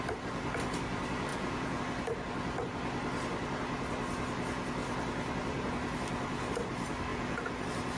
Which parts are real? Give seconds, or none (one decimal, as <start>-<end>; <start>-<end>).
0.0-1.3; 1.8-7.1; 7.6-8.0